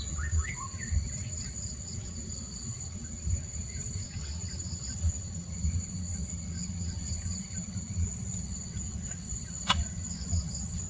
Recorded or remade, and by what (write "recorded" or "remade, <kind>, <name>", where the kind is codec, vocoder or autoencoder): remade, vocoder, WaveNeXt